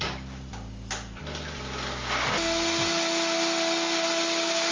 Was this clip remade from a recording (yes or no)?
no